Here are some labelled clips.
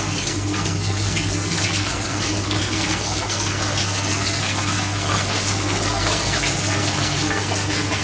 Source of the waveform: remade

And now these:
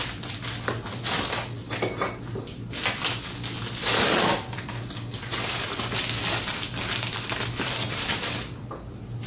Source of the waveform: recorded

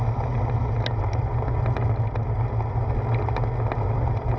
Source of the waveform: recorded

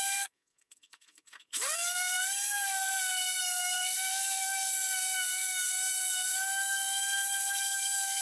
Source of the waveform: remade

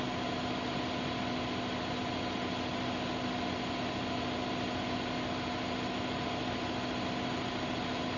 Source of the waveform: recorded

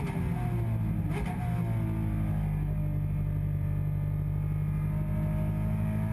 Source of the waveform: recorded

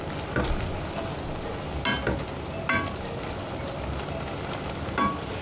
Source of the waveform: recorded